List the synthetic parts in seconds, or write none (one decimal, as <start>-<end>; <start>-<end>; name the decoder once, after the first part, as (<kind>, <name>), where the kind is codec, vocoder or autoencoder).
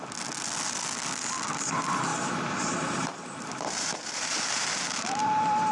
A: 2.1-5.7 (vocoder, BigVGAN v2)